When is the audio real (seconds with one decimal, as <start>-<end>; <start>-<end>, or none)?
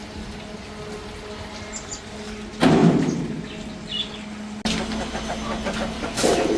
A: 0.0-6.6